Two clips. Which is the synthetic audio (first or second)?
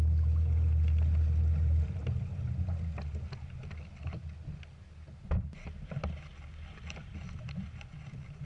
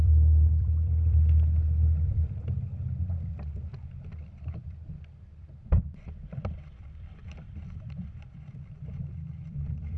second